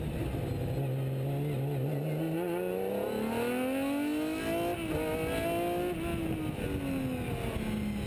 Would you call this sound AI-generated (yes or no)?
no